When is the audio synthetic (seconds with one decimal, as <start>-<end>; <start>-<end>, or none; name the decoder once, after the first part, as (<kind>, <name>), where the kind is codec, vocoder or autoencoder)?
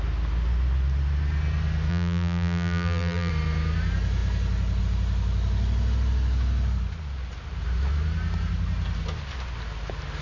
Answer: 1.9-3.3 (vocoder, BigVGAN v2)